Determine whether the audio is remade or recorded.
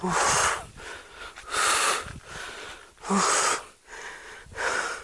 recorded